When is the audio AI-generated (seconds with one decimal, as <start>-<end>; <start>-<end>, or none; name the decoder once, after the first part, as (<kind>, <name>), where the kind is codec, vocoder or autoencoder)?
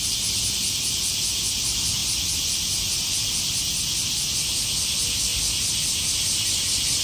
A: none